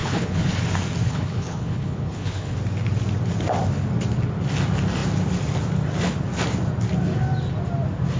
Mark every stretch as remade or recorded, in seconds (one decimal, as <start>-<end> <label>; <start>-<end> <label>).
0.0-0.5 remade; 0.5-1.0 recorded; 1.0-2.6 remade; 2.6-8.2 recorded